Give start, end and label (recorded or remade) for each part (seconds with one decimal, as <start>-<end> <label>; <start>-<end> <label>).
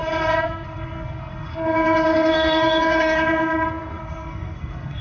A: 0.0-5.0 remade